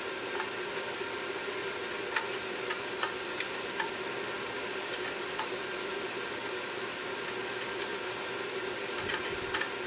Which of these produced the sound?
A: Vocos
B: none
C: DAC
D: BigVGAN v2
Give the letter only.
B